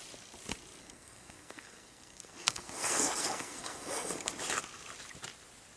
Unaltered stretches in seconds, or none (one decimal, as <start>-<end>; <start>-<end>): 0.0-0.8; 4.3-5.8